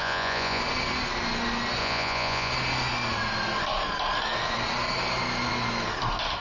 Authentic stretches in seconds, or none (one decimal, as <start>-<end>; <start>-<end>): 0.6-1.8; 2.5-6.4

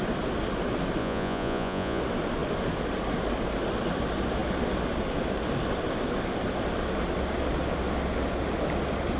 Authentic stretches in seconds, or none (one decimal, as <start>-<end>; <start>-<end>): 0.0-1.0; 2.0-9.2

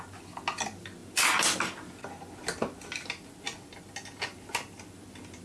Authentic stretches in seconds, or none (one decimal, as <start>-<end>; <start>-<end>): 0.0-5.4